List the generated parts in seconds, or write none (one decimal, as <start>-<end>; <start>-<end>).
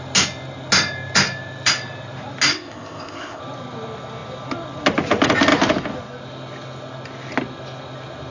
2.5-3.4